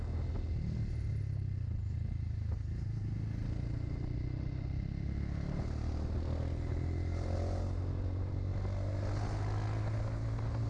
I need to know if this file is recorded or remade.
recorded